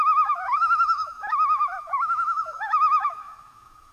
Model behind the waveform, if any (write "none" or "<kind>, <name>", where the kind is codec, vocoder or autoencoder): autoencoder, DAC-VAE